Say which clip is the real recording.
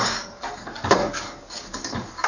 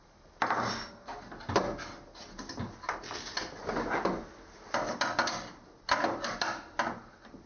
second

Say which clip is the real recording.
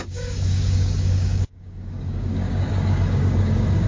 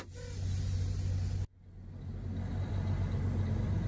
second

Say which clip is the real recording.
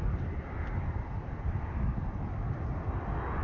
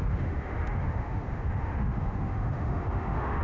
first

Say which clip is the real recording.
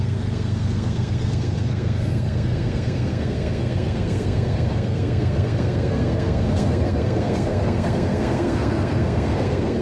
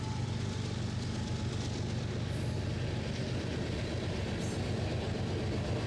second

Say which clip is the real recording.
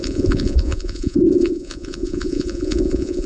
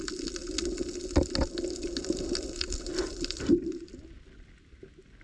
second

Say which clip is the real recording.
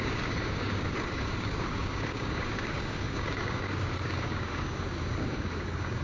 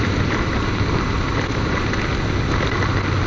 second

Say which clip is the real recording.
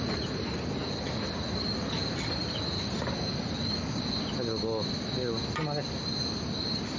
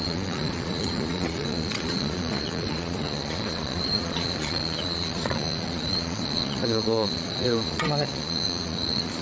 first